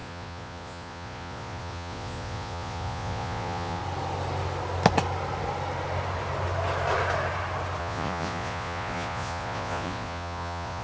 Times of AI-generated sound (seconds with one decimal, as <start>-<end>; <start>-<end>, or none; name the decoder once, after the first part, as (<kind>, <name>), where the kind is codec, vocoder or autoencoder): 0.0-3.8 (vocoder, Vocos); 7.8-10.8